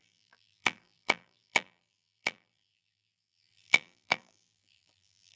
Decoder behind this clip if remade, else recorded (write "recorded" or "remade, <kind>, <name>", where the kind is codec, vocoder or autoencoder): remade, vocoder, BigVGAN v2